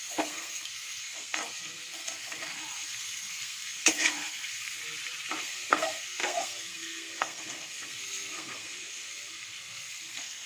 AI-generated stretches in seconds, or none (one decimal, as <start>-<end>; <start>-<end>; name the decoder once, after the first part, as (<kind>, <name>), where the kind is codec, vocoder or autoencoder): 0.0-4.8 (codec, SNAC); 5.4-10.5